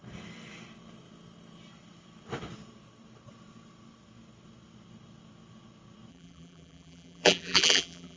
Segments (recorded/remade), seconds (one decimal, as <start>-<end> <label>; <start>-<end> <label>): 0.0-6.1 recorded; 6.1-8.2 remade